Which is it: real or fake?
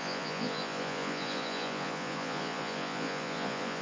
fake